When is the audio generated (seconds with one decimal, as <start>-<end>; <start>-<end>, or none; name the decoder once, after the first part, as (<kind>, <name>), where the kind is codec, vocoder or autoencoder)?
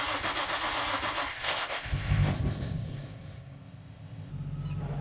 1.3-4.3 (codec, ZipCodec)